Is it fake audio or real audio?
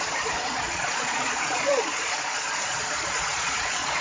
fake